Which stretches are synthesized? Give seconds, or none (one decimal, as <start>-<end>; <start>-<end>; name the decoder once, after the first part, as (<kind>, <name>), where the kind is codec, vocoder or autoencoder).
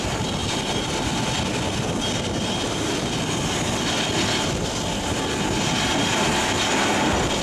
none